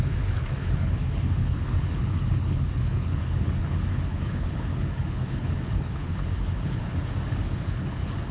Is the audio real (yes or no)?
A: no